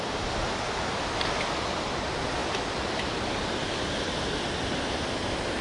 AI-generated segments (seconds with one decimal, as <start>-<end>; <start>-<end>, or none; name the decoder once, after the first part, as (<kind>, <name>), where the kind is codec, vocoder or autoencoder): none